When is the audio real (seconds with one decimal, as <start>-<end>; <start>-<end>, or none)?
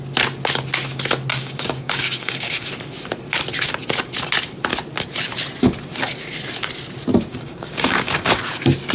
0.0-1.3; 2.7-7.3; 8.4-8.9